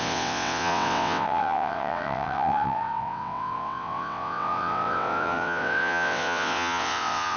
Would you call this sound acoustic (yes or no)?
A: no